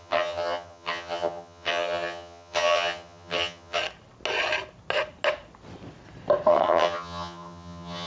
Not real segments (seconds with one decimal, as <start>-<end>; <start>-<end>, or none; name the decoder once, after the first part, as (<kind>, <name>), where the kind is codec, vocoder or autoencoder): 0.0-3.8 (vocoder, HiFi-GAN); 6.5-8.1